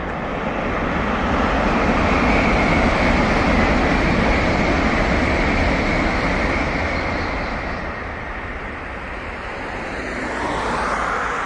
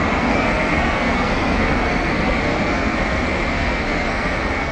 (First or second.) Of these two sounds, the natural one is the first